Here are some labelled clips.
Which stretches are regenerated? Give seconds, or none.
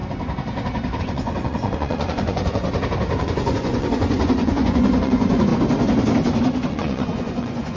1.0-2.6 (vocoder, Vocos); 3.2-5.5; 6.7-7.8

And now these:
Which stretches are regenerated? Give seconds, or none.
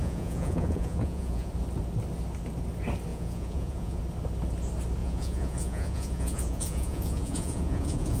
0.0-1.5 (vocoder, Vocos); 3.1-4.0; 5.0-8.2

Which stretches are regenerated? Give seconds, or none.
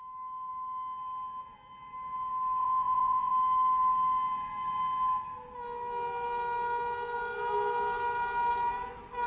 2.6-3.3 (vocoder, Vocos)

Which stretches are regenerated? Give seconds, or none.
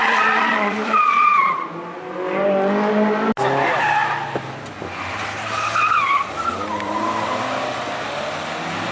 0.0-1.6 (vocoder, Vocos)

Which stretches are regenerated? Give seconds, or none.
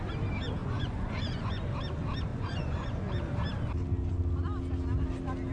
0.6-1.6 (vocoder, Vocos); 2.3-3.1